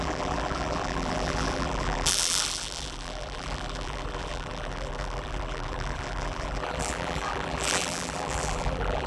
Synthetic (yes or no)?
yes